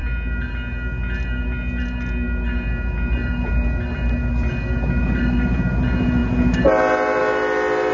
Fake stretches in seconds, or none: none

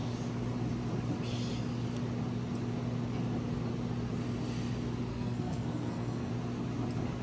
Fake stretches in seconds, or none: 5.1-6.3

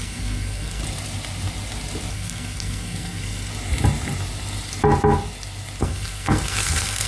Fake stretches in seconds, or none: 0.0-0.8; 2.1-3.5; 5.8-7.1

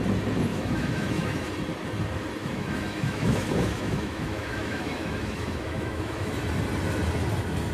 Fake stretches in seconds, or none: 0.5-1.5; 2.4-6.3

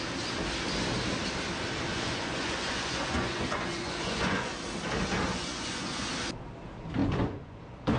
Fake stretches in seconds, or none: 1.9-4.5; 5.3-6.1; 7.0-7.6

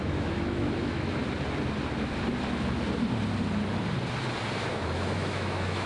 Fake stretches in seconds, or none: 0.0-1.2; 4.7-5.9

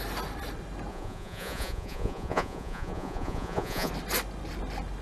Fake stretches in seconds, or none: 0.9-3.9

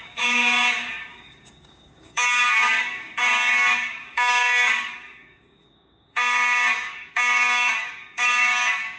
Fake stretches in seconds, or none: 0.0-9.0